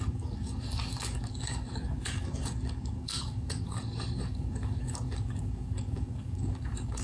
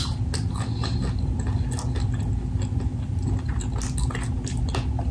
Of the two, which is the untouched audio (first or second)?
second